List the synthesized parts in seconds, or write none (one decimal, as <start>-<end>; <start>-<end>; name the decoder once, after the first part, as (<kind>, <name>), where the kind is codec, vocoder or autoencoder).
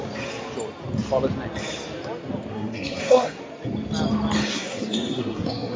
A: 2.5-3.4 (codec, SNAC); 4.5-5.8